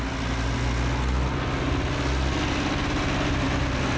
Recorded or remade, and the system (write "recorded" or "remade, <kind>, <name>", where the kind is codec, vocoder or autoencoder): recorded